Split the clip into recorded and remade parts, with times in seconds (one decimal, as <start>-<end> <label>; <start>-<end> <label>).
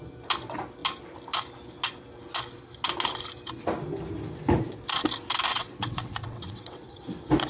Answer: 0.0-5.5 recorded; 5.5-7.0 remade; 7.0-7.5 recorded